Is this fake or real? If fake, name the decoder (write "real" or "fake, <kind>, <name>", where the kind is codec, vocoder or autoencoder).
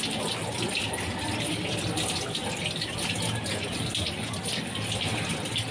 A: real